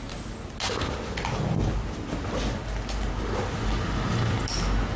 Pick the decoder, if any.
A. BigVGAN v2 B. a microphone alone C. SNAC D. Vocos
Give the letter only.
B